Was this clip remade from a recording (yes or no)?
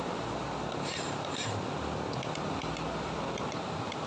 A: no